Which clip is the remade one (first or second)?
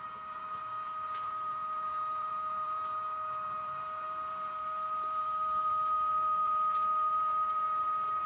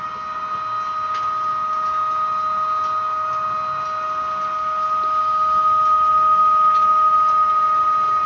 first